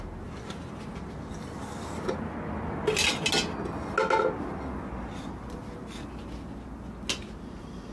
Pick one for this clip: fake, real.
real